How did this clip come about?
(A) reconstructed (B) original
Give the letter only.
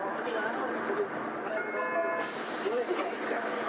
B